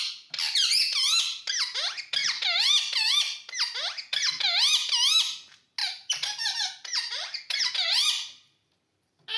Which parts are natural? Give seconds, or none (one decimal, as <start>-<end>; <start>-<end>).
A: 0.0-5.8; 7.7-9.4